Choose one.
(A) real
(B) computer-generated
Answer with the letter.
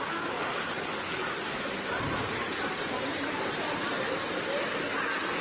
A